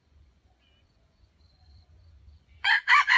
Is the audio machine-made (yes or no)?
yes